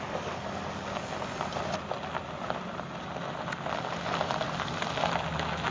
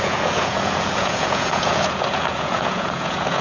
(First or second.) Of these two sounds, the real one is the first